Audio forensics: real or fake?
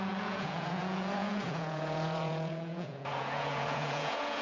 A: fake